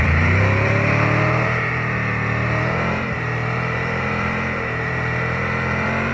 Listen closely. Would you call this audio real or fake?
fake